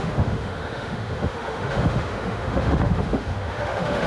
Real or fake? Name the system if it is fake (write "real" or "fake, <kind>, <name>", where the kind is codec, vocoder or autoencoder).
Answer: fake, autoencoder, DAC-VAE